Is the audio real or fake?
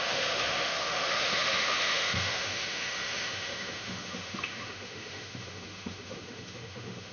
fake